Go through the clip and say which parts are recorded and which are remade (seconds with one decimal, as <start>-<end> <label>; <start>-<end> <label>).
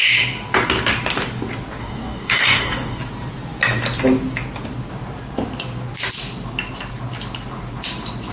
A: 0.0-1.8 recorded; 1.8-3.0 remade; 3.0-8.3 recorded